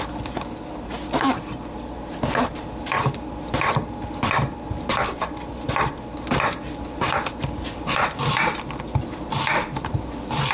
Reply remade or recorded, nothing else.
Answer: recorded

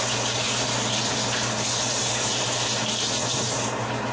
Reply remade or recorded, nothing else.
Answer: recorded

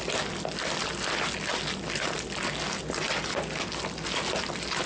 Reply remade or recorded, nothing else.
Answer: recorded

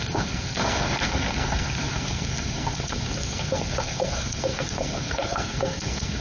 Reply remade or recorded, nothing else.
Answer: remade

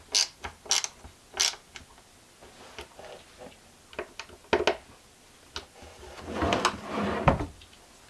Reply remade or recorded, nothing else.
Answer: recorded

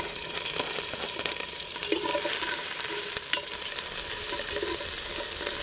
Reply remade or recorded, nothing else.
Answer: recorded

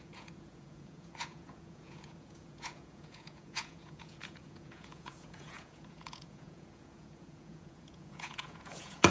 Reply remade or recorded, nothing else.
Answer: remade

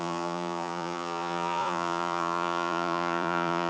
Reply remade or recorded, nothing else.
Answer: remade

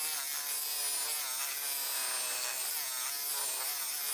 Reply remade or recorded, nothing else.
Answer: recorded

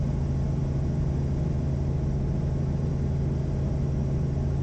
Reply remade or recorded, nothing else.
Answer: recorded